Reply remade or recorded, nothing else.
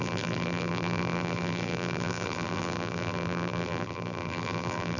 remade